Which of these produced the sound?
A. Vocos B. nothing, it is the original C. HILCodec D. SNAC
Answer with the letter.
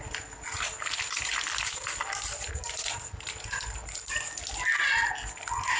B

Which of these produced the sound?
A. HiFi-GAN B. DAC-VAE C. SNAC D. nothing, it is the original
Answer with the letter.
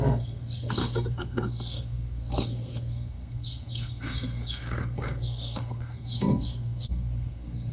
C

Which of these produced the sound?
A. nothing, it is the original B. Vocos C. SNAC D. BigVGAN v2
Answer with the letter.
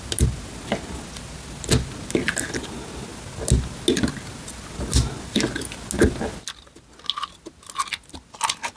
A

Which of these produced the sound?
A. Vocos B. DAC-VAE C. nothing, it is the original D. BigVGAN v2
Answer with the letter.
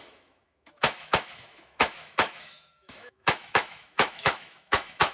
B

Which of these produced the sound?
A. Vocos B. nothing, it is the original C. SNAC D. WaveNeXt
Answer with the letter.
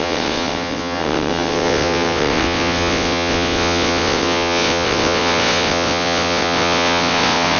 D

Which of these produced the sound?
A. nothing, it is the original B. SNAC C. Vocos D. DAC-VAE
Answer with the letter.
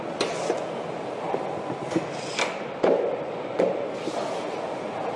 A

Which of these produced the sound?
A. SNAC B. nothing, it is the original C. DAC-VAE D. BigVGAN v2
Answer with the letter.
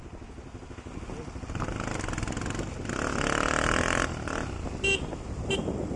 B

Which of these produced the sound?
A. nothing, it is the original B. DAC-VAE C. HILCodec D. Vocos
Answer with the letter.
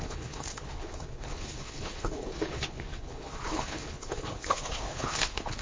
C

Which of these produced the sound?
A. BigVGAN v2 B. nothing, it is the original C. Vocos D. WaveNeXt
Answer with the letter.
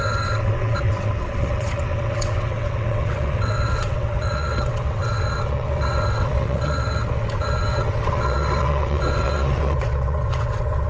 D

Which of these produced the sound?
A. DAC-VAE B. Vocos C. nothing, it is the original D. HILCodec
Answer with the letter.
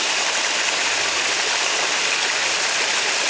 C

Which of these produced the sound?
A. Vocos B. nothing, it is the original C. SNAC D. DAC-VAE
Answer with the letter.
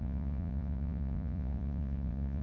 A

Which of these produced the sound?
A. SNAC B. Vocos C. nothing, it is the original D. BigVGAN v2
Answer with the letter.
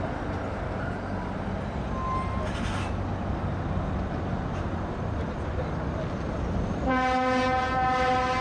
C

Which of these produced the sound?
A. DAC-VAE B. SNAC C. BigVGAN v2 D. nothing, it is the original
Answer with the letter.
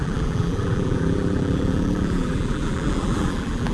C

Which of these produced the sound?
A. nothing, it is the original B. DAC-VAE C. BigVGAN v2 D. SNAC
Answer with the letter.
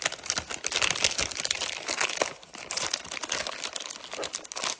A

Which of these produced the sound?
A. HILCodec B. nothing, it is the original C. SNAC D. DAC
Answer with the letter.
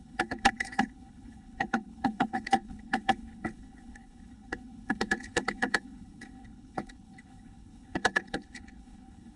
A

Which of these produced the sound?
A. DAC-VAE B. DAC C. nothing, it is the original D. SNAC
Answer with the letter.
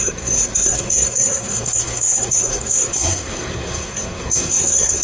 D